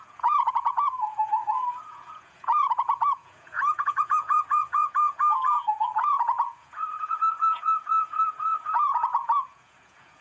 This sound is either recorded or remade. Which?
remade